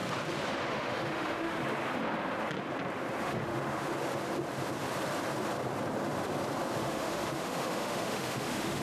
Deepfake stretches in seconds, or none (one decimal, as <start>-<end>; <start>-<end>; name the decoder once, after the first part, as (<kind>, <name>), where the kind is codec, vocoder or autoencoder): 0.7-1.6 (autoencoder, DAC-VAE); 3.2-3.9; 6.8-8.8